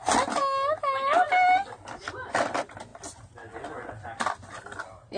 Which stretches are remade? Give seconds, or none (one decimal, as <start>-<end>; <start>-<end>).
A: none